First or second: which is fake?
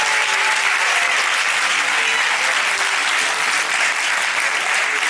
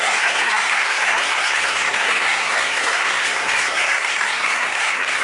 second